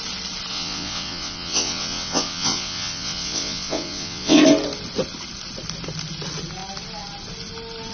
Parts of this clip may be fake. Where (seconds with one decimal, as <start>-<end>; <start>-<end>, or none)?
0.5-4.4